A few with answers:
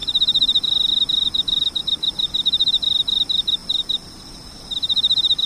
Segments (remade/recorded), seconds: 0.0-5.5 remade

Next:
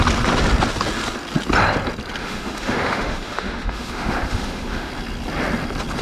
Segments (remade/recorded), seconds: 0.0-2.2 recorded; 2.2-4.9 remade; 4.9-6.0 recorded

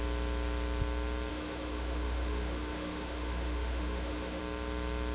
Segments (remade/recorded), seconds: 0.0-1.3 recorded; 1.3-4.4 remade; 4.4-5.1 recorded

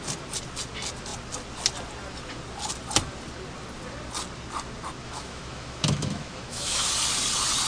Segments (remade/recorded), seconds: 0.0-5.0 recorded; 5.0-6.9 remade; 6.9-7.7 recorded